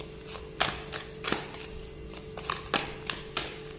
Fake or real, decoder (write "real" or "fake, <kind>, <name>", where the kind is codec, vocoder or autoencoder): real